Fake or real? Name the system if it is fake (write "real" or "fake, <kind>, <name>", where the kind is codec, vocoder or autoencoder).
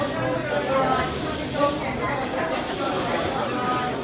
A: real